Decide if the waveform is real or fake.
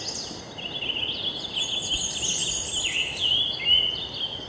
real